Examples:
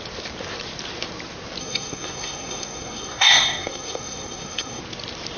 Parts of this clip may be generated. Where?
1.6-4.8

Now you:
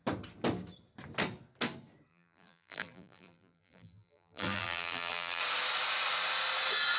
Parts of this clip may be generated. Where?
2.1-5.4

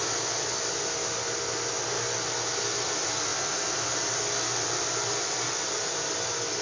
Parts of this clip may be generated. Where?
none

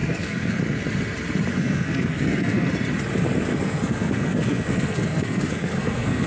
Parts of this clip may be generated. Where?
0.0-0.6; 1.5-2.7; 3.5-6.3